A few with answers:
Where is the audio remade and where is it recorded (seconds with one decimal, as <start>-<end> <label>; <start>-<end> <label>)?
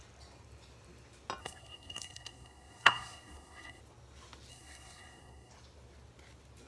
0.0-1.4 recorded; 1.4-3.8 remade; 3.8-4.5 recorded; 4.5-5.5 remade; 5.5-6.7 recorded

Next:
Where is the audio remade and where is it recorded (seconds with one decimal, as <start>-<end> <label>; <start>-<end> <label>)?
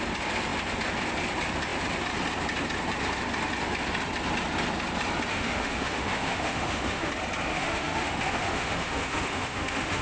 0.0-5.3 recorded; 5.3-7.1 remade; 7.1-7.5 recorded; 7.5-10.0 remade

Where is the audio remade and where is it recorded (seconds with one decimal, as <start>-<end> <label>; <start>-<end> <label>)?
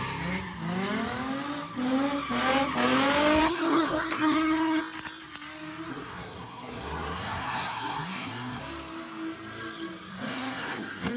0.0-3.4 recorded; 3.4-4.8 remade; 4.8-5.9 recorded; 5.9-8.6 remade; 8.6-10.1 recorded; 10.1-11.2 remade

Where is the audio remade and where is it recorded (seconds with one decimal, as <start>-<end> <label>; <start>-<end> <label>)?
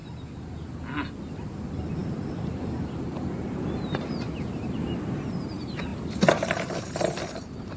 0.0-1.3 recorded; 1.3-7.8 remade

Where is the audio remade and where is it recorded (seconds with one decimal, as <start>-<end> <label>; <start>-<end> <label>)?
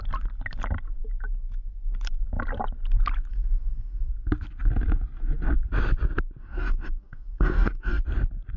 0.0-3.3 recorded; 3.3-4.1 remade; 4.1-6.4 recorded; 6.4-8.0 remade; 8.0-8.6 recorded